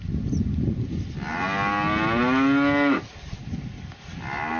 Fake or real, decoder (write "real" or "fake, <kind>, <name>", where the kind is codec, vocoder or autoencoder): real